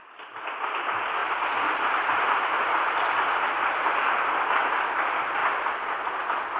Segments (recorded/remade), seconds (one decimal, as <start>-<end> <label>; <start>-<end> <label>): 0.0-6.6 recorded